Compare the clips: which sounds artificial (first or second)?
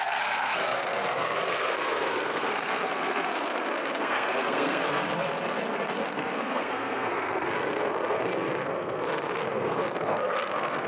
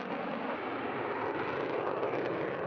first